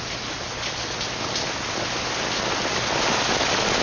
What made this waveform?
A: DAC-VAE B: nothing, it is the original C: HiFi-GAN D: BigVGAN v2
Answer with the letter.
B